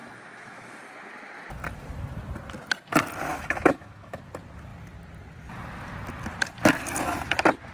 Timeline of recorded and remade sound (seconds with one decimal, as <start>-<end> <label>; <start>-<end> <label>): 0.0-0.8 remade; 0.8-3.3 recorded; 3.3-4.2 remade; 4.2-7.7 recorded